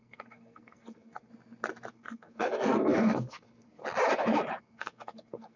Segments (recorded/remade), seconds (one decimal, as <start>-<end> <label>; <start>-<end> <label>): 0.0-1.3 remade; 1.3-1.9 recorded; 1.9-3.8 remade; 3.8-4.6 recorded; 4.6-5.6 remade